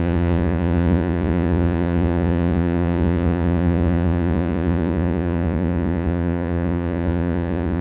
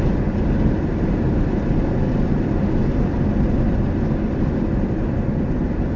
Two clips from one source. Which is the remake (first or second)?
first